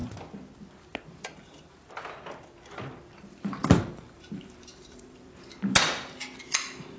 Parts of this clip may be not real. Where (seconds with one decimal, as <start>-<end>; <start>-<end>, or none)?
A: 3.6-5.3